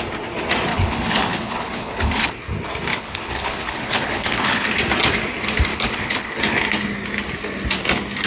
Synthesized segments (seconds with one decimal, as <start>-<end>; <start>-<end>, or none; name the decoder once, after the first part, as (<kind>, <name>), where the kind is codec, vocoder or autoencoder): 0.7-2.3 (codec, HILCodec); 2.9-4.7; 5.7-6.4